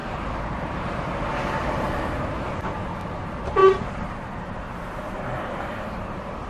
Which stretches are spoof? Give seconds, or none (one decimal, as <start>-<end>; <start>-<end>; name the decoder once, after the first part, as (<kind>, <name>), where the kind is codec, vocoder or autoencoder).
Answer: 0.0-2.5 (vocoder, BigVGAN v2); 3.6-6.5